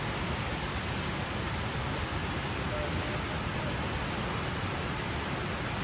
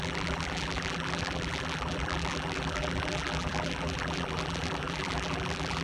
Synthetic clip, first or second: second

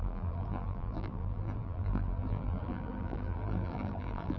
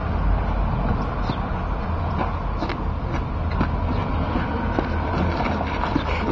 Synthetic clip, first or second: first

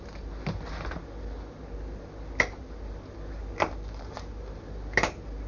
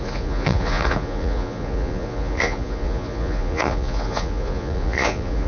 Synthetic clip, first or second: second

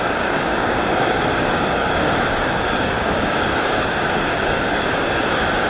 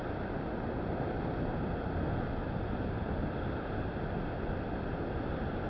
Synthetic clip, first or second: first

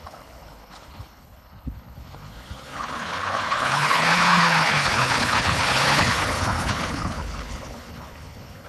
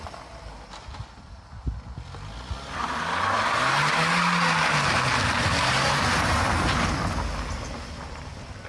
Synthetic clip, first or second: first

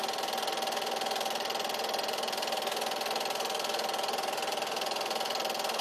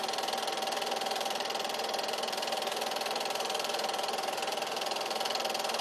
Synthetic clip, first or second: second